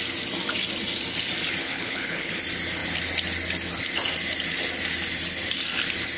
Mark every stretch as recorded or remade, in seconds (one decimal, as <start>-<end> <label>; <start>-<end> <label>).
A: 0.0-1.6 recorded; 1.6-2.4 remade; 2.4-6.2 recorded